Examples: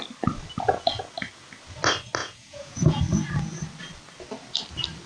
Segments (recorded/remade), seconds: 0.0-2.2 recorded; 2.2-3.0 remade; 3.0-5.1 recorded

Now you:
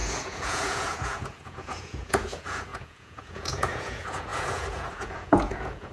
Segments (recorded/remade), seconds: 0.0-5.9 remade

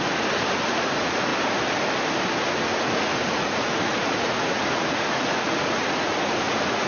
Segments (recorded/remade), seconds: 0.0-1.3 remade; 1.3-2.4 recorded; 2.4-6.9 remade

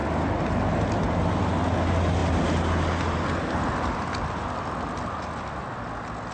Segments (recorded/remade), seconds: 0.0-6.3 recorded